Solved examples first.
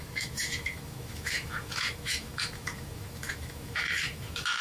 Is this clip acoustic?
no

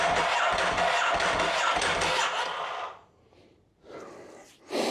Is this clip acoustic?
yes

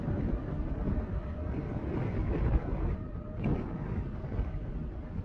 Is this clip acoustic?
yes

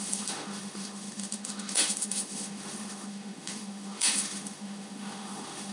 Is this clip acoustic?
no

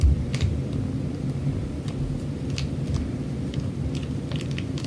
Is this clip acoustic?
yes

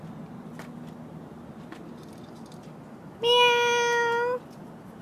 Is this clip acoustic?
yes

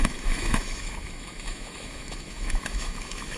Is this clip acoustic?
no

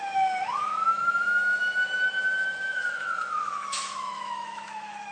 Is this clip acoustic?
no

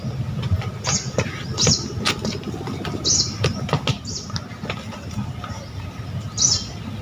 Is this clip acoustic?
yes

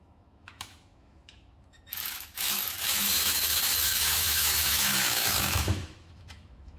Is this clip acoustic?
no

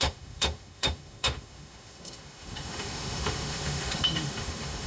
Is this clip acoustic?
no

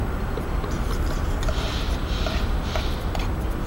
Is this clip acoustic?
yes